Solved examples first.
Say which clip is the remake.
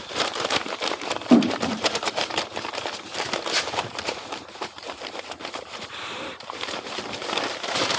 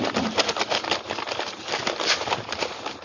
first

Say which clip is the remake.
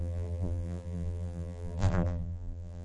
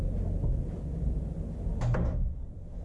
first